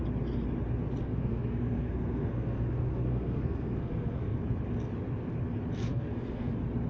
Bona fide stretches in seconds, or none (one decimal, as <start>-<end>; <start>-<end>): 0.0-1.0; 4.4-5.9; 6.5-6.9